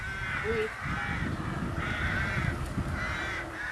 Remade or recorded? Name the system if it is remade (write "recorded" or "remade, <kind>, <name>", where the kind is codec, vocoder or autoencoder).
recorded